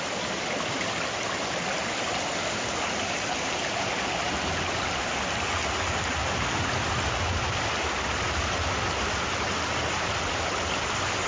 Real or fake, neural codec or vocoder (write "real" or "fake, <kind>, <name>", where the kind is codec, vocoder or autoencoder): real